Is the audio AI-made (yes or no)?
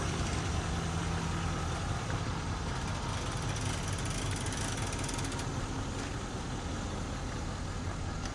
no